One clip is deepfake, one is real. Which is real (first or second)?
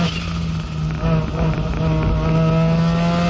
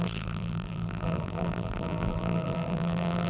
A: first